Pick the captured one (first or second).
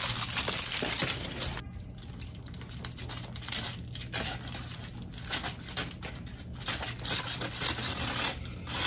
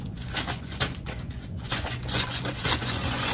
first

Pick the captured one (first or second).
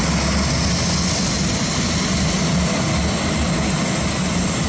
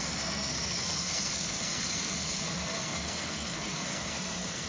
first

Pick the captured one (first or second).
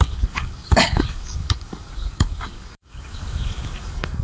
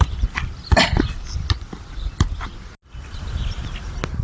second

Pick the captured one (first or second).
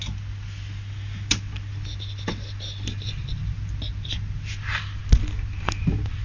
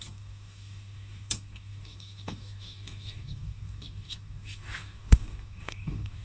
first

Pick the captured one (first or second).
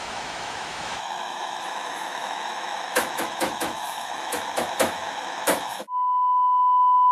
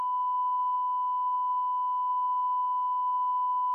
second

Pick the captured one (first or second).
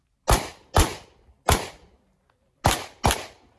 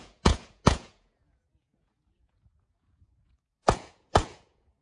first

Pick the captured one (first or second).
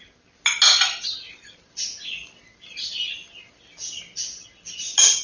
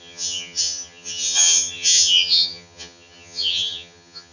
first